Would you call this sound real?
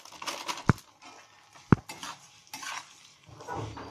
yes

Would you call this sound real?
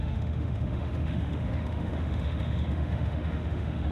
no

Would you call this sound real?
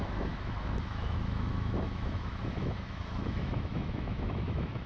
no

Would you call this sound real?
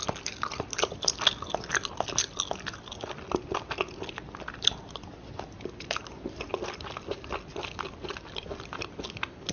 yes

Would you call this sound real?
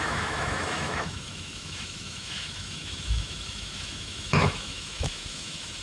no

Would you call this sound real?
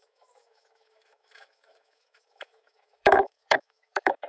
no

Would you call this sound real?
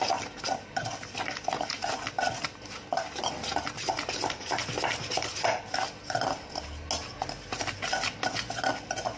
yes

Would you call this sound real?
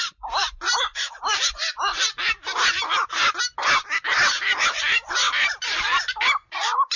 yes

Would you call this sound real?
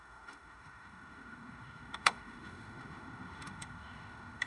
no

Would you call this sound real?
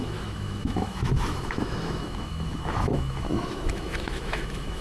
no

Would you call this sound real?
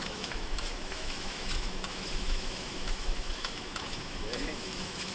no